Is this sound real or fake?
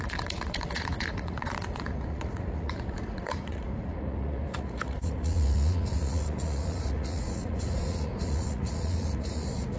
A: fake